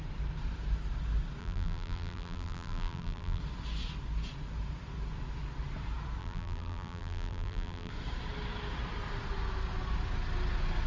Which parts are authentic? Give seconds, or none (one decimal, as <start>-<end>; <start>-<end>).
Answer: 0.0-1.4; 3.4-6.2; 7.9-10.9